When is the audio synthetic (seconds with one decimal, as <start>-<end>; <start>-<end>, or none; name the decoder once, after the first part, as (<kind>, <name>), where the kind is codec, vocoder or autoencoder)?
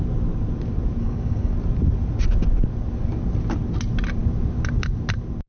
1.0-1.5 (codec, HILCodec)